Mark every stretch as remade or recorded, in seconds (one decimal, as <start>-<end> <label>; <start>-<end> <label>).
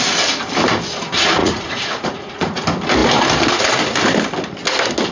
0.0-1.4 recorded; 1.4-2.6 remade; 2.6-5.1 recorded